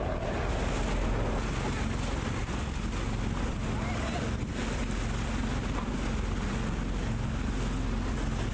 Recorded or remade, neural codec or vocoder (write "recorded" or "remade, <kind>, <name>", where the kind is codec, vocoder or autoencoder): recorded